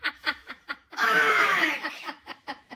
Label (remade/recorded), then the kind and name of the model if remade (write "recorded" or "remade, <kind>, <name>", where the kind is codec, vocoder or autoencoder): remade, autoencoder, DAC-VAE